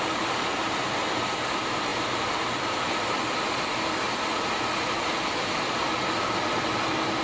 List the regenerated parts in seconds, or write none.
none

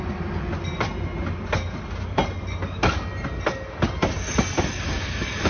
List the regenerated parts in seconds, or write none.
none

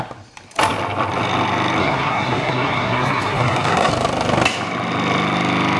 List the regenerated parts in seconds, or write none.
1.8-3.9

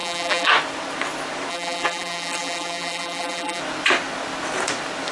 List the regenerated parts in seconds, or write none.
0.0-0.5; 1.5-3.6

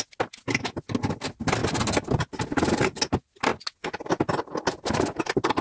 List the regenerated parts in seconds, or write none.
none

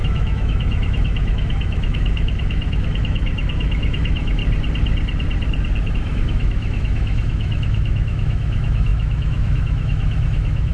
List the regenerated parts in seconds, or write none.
0.0-4.4; 5.9-10.7

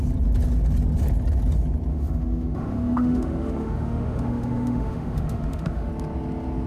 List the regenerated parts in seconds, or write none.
1.9-5.9

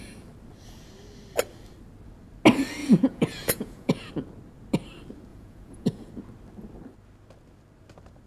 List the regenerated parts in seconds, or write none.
2.8-4.1; 5.3-6.1